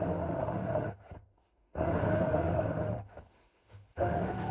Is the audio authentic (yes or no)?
no